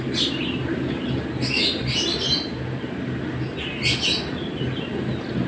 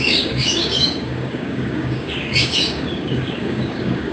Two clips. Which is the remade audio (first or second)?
second